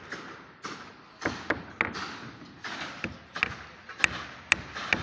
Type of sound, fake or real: real